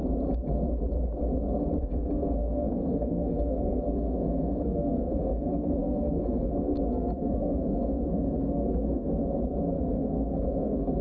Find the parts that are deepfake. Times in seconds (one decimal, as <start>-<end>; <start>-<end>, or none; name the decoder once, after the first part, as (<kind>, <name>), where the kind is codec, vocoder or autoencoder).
1.8-9.2 (codec, SNAC); 9.8-11.0